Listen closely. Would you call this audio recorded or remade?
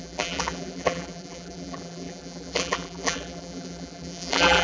remade